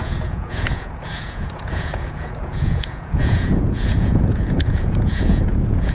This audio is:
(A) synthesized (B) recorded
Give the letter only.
A